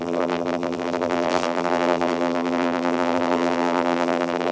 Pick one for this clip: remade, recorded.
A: remade